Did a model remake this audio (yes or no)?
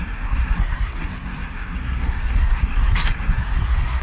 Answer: yes